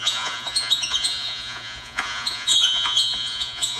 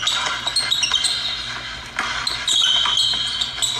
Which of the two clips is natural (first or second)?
second